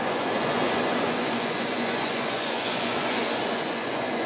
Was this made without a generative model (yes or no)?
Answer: no